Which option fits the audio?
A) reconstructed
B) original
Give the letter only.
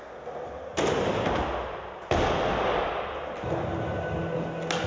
B